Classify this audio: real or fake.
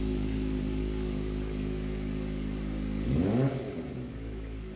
fake